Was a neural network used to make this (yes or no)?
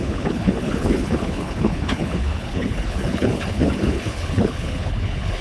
yes